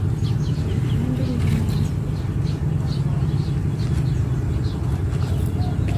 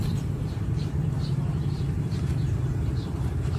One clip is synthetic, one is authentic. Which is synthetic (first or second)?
second